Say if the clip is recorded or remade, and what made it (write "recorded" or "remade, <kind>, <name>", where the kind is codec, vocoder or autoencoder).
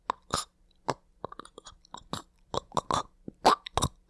recorded